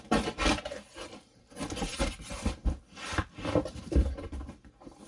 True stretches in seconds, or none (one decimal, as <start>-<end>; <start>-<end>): 0.0-5.1